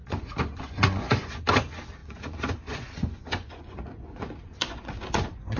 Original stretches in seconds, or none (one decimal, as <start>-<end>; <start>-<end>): 1.4-2.0